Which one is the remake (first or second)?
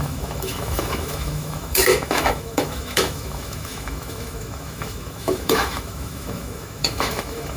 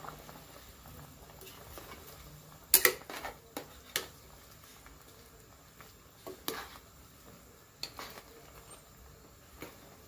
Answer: first